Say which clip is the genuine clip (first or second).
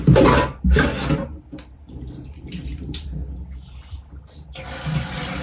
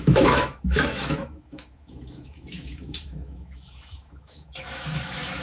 first